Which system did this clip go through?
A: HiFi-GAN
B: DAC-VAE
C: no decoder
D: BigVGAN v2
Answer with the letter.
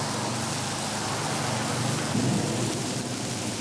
C